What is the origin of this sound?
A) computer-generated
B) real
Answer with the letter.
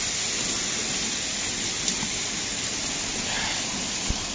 B